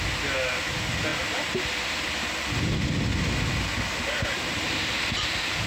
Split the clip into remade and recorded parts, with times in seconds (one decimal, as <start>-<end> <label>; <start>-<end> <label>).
0.0-5.7 recorded